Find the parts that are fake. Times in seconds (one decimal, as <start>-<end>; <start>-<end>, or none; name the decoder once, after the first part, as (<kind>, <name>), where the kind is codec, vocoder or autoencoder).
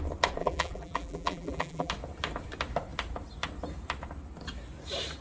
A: 0.4-1.9 (vocoder, BigVGAN v2)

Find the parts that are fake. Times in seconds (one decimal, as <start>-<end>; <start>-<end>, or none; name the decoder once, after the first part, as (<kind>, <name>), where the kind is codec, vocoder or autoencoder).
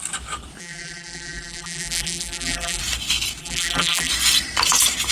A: 0.6-2.8 (vocoder, BigVGAN v2); 3.4-4.1